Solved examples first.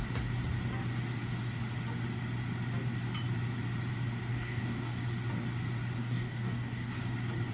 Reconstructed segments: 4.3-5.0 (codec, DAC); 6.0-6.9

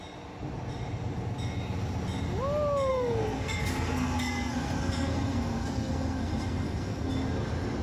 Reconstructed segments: 2.9-7.1 (codec, SNAC)

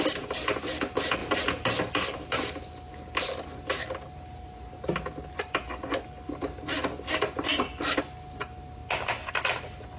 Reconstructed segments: none

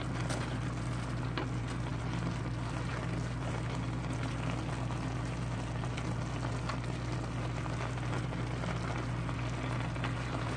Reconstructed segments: none

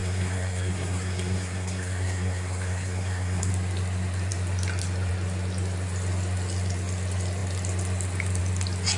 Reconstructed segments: 0.0-3.5 (codec, SNAC)

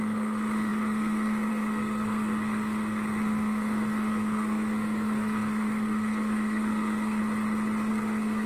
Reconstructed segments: 0.0-7.2 (codec, SNAC); 7.9-8.5

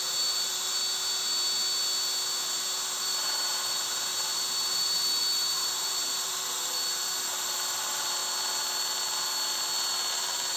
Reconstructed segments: 0.0-0.8 (vocoder, BigVGAN v2); 3.0-8.2; 10.1-10.6